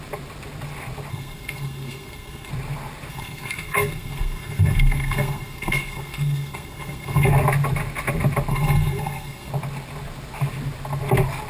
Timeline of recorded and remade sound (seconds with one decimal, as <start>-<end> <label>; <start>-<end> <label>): 0.0-1.1 recorded; 1.1-2.5 remade; 2.5-3.1 recorded; 3.1-7.3 remade; 7.3-8.5 recorded; 8.5-9.5 remade; 9.5-11.5 recorded